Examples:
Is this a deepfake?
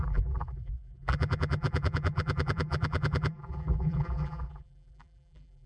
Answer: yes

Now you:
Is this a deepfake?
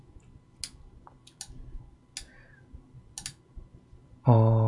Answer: no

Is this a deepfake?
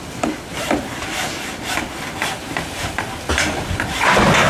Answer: no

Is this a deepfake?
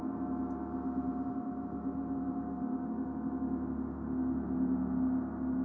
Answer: no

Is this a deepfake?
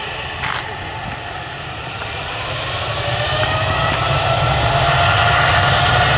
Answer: no